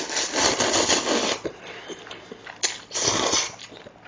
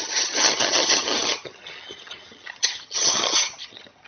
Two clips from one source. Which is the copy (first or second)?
second